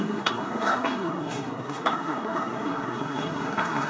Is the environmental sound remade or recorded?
remade